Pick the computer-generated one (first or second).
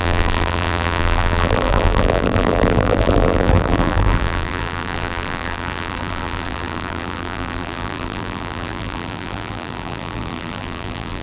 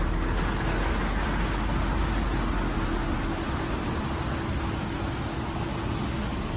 first